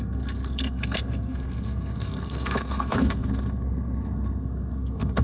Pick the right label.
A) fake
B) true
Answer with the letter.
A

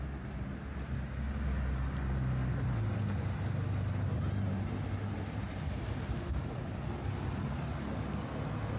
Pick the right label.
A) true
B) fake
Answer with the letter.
A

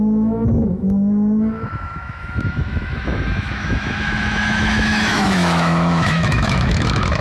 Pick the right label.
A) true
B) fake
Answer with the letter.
B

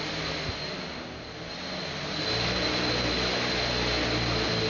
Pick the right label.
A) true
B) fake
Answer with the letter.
A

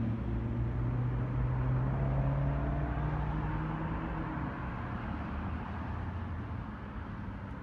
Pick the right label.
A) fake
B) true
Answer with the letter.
B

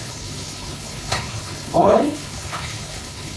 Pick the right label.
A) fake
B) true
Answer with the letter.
A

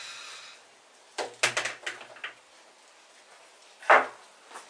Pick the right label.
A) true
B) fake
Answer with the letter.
A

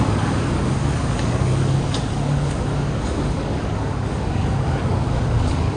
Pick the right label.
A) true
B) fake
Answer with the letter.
B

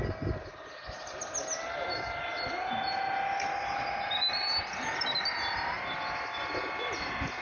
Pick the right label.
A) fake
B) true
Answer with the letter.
B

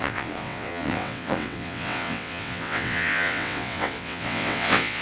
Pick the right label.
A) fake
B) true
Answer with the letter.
A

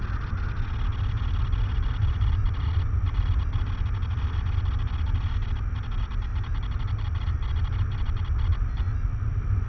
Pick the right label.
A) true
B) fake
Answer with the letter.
A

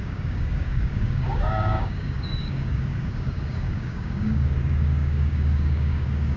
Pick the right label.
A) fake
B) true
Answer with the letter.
A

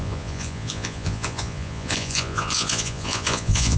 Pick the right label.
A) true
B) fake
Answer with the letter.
B